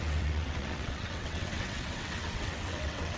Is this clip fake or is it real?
fake